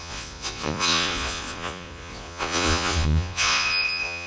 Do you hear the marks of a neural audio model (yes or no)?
yes